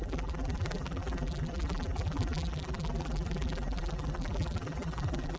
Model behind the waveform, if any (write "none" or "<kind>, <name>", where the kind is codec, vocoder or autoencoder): vocoder, BigVGAN v2